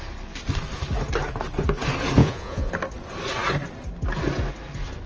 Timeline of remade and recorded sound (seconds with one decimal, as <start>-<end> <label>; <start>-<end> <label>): 0.0-2.2 recorded; 2.2-2.7 remade; 2.7-5.1 recorded